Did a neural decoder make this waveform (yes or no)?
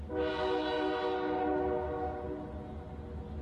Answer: no